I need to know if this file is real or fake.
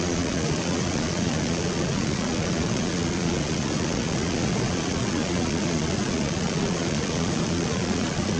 fake